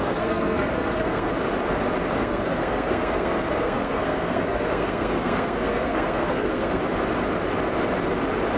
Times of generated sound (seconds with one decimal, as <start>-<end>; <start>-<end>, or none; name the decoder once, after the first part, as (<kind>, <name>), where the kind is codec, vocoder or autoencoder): 0.0-1.3 (codec, SNAC); 2.2-6.8